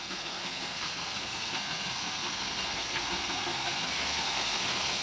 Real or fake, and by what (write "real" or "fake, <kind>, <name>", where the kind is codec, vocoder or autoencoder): fake, codec, SNAC